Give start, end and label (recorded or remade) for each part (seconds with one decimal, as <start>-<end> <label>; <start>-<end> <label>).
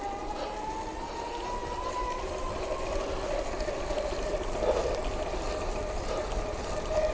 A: 0.0-7.1 recorded